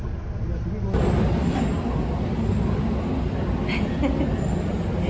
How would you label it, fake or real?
real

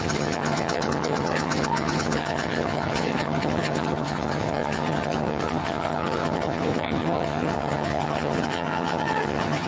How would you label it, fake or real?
fake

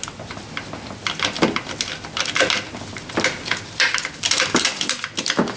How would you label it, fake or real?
real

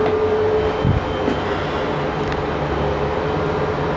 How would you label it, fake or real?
real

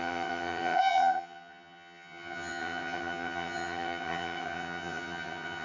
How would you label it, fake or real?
fake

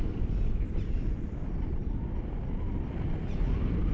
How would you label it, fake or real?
real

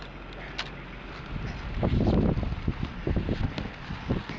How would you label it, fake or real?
real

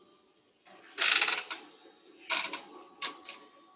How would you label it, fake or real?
real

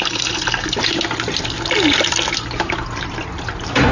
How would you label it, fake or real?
real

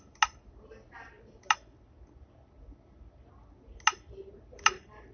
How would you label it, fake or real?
real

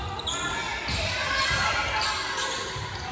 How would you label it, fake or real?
real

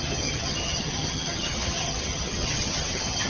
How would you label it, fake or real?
fake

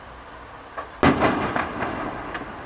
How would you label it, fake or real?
real